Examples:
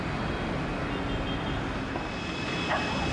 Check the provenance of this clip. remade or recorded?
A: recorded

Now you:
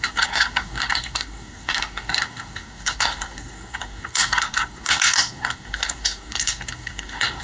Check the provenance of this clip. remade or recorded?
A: remade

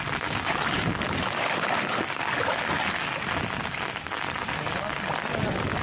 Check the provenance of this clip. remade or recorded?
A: recorded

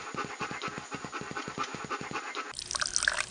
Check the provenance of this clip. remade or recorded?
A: recorded